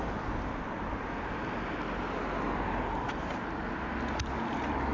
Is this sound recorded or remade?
recorded